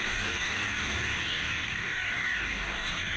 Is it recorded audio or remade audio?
remade